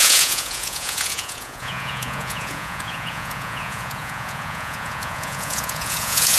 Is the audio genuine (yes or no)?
no